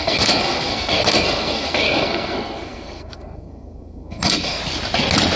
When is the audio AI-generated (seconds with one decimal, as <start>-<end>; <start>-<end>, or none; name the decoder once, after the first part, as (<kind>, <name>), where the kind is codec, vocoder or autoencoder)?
0.0-4.6 (codec, SNAC)